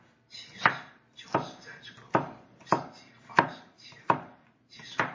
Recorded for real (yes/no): no